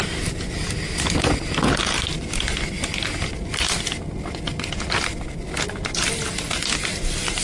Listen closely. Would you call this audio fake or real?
real